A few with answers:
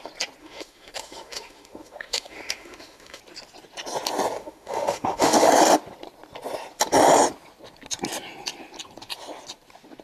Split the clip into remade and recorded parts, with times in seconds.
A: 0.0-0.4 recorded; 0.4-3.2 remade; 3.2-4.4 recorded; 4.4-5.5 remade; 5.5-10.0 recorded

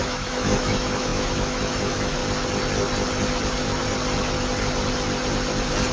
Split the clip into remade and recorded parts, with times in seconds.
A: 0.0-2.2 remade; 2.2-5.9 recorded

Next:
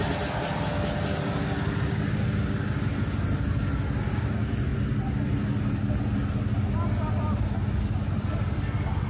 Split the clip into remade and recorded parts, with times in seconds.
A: 0.0-9.1 recorded

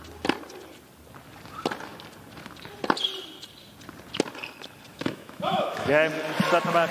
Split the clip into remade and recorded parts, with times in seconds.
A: 0.0-4.9 recorded; 4.9-6.1 remade; 6.1-6.9 recorded

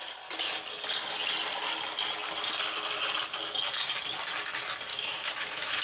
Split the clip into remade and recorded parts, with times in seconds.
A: 0.0-4.9 recorded; 4.9-5.8 remade

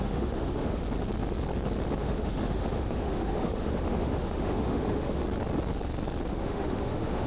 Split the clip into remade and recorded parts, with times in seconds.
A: 0.0-0.8 remade; 0.8-2.0 recorded; 2.0-5.2 remade; 5.2-6.3 recorded; 6.3-7.3 remade

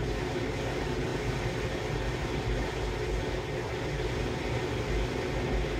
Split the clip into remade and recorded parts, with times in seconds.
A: 0.0-5.8 recorded